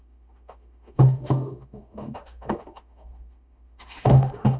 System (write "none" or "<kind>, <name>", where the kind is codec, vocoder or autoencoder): autoencoder, DAC-VAE